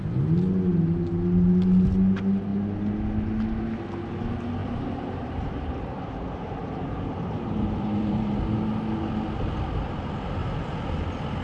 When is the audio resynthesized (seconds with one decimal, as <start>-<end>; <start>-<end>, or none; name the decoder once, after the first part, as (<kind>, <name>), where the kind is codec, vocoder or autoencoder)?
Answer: 4.6-8.4 (vocoder, BigVGAN v2); 10.4-10.9